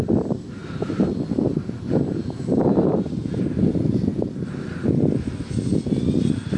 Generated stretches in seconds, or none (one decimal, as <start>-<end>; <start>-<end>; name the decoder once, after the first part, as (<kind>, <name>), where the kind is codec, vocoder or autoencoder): 0.0-0.6 (vocoder, BigVGAN v2); 2.4-3.7; 4.7-6.6